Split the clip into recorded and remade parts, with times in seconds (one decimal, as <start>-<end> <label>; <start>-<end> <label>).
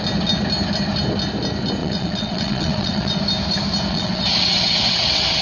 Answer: 0.0-1.8 recorded; 1.8-3.2 remade; 3.2-3.9 recorded; 3.9-5.4 remade